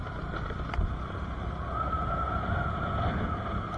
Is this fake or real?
real